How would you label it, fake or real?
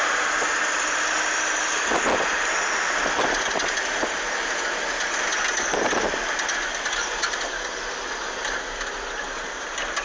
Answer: real